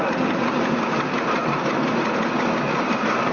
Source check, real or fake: real